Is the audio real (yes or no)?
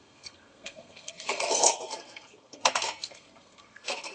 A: no